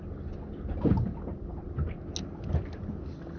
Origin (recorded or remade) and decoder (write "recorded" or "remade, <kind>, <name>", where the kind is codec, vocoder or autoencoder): recorded